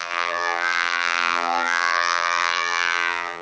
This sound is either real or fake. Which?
fake